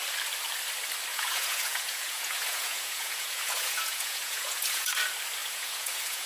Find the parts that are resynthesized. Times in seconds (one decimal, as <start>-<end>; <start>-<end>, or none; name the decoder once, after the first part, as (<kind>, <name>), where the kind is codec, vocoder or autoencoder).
1.1-4.9 (vocoder, Vocos); 5.4-6.3

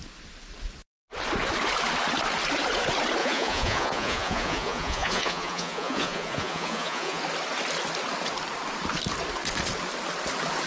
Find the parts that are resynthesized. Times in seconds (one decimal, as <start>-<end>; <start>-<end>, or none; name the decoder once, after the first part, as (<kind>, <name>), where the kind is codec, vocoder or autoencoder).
3.2-7.2 (vocoder, Vocos)

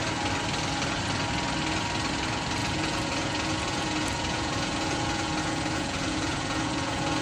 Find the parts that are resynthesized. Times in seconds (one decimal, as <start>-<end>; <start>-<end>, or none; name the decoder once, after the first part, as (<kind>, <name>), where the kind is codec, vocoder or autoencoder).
2.6-7.2 (vocoder, Vocos)

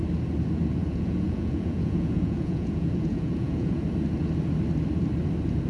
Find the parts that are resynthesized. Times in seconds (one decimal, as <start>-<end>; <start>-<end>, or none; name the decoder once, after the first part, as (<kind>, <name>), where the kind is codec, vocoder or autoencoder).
0.8-3.8 (vocoder, Vocos)

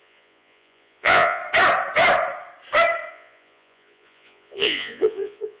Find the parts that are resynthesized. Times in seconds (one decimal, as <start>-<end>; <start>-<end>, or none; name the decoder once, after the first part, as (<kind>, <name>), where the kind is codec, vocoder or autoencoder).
0.0-1.4 (vocoder, Vocos); 3.1-5.6

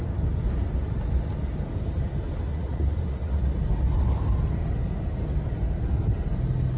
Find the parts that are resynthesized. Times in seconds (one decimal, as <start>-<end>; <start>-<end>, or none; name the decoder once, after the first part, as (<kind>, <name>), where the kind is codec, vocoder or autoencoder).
2.5-3.6 (vocoder, Vocos)

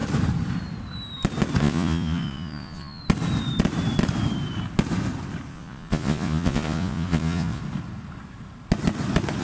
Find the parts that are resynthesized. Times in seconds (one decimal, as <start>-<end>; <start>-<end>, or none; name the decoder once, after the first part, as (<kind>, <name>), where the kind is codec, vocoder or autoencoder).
1.6-3.0 (vocoder, Vocos); 5.5-7.6